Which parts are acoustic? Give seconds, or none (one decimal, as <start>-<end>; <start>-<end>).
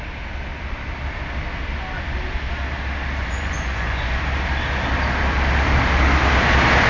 0.0-3.2; 4.2-6.9